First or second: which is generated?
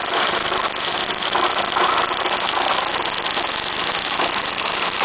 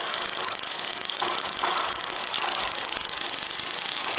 second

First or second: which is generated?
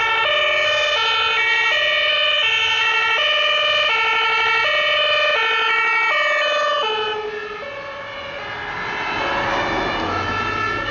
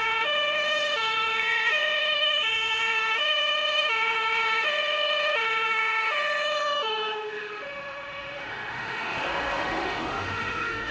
second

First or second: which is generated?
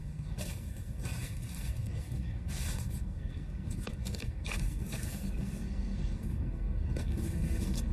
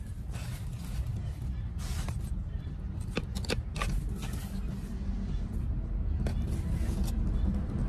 first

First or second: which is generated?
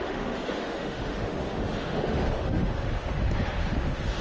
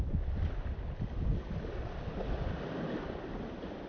first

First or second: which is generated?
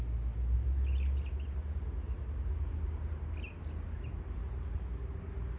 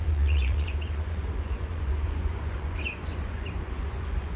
second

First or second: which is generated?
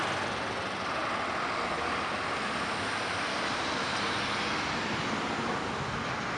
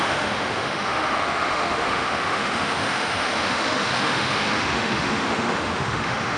second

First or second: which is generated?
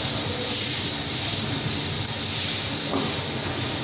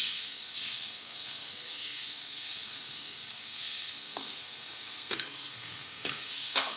second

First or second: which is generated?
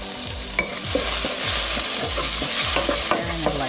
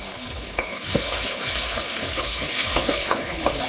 second